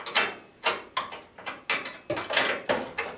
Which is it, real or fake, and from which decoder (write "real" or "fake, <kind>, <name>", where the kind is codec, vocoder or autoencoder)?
real